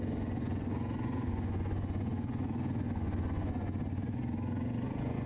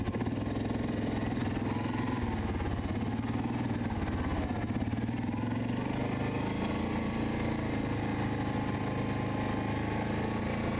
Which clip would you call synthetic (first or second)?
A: first